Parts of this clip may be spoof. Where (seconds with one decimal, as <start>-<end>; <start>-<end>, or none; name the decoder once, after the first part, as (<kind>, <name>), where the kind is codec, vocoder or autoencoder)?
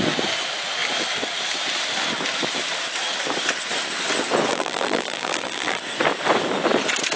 4.5-5.8 (vocoder, BigVGAN v2)